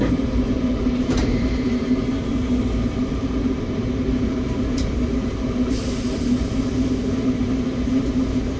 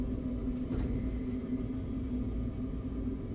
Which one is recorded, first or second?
second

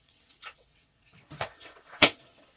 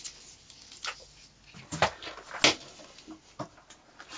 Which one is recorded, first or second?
second